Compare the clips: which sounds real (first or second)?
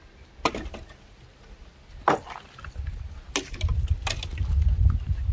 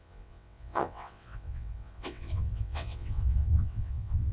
first